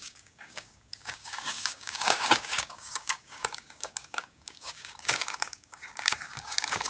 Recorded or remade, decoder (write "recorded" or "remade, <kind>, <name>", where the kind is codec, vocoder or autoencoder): remade, codec, DAC